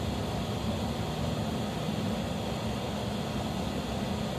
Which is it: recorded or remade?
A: recorded